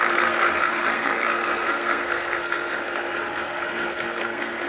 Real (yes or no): no